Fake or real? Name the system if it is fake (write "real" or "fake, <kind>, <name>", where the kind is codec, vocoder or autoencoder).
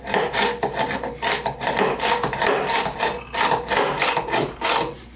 real